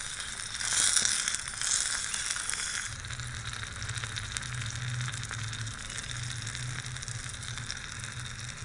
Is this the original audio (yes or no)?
yes